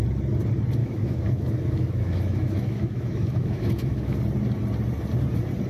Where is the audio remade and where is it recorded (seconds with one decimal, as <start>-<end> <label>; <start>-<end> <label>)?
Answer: 0.0-0.8 recorded; 0.8-4.2 remade; 4.2-5.7 recorded